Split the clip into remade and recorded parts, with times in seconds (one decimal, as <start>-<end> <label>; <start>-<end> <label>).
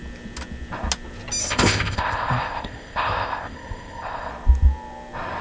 0.0-1.4 recorded; 1.4-4.3 remade; 4.3-5.4 recorded